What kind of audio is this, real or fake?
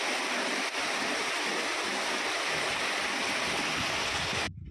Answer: real